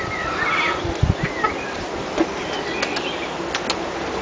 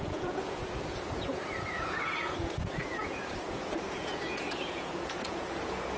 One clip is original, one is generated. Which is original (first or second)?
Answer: first